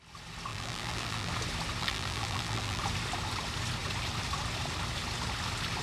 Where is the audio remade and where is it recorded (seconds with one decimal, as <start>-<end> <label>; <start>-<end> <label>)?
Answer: 0.0-0.5 recorded; 0.5-1.3 remade; 1.3-1.8 recorded; 1.8-2.8 remade; 2.8-5.8 recorded